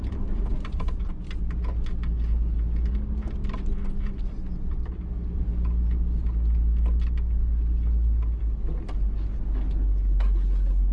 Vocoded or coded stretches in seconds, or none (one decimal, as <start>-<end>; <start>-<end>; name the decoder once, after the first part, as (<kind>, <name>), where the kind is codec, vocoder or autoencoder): 0.5-1.1 (vocoder, BigVGAN v2); 3.4-5.1